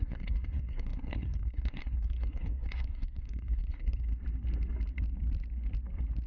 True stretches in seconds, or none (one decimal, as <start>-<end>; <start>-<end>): 4.1-6.3